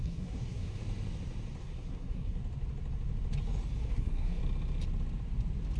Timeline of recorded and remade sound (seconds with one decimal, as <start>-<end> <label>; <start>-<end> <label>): 0.0-0.8 remade; 0.8-1.6 recorded; 1.6-2.4 remade; 2.4-3.9 recorded; 3.9-4.4 remade; 4.4-5.8 recorded